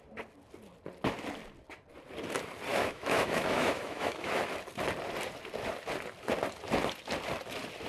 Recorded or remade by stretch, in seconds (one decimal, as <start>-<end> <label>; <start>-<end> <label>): 0.0-2.7 recorded; 2.7-4.3 remade; 4.3-7.9 recorded